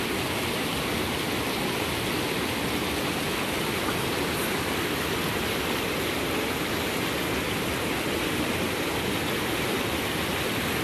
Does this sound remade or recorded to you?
recorded